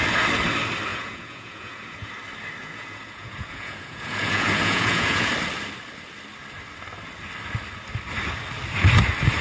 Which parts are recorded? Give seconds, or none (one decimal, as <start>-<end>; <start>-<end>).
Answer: 0.0-0.9; 2.1-2.6; 5.3-9.4